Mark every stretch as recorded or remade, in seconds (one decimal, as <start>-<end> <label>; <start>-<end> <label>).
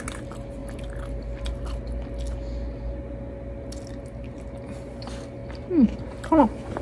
0.0-6.8 recorded